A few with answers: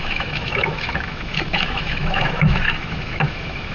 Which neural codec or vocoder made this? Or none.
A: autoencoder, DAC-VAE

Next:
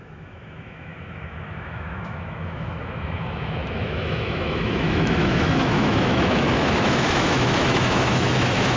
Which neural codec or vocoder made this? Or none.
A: autoencoder, DAC-VAE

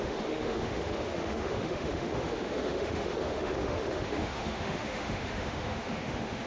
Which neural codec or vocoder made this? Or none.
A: autoencoder, DAC-VAE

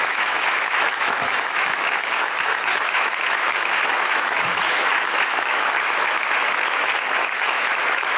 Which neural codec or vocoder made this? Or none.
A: autoencoder, DAC-VAE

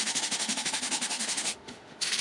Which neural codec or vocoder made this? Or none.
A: autoencoder, DAC-VAE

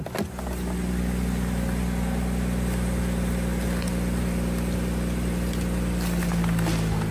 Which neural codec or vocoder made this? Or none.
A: none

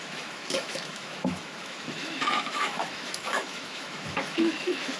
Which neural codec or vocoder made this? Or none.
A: autoencoder, DAC-VAE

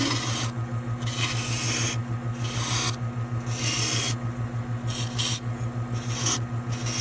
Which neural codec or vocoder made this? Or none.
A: none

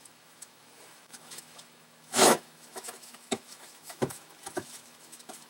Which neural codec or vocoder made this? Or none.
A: autoencoder, DAC-VAE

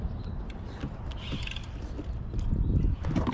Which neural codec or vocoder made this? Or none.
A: none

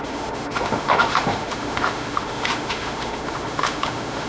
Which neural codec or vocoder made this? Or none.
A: autoencoder, DAC-VAE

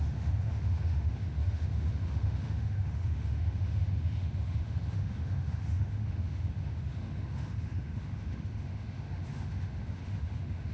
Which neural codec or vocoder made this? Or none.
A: autoencoder, DAC-VAE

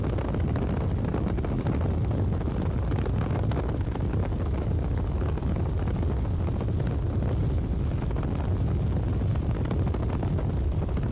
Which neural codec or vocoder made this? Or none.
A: none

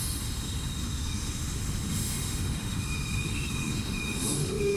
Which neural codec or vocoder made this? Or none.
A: autoencoder, DAC-VAE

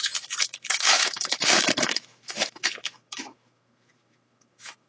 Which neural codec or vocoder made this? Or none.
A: autoencoder, DAC-VAE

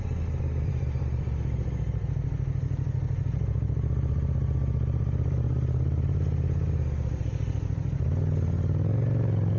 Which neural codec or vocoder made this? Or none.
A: none